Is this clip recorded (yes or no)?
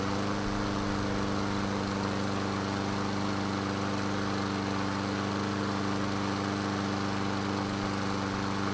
yes